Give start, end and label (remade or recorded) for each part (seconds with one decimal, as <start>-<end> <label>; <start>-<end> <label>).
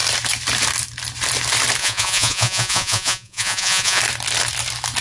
0.0-1.8 recorded; 1.8-4.0 remade; 4.0-5.0 recorded